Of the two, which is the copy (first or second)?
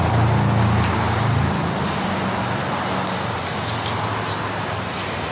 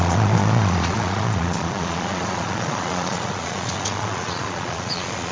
second